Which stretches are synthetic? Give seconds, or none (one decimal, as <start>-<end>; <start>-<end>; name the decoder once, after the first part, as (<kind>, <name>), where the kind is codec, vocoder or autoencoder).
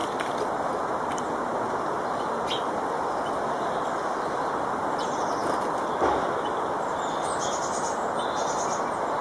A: none